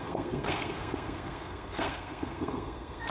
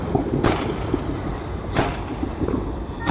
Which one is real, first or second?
second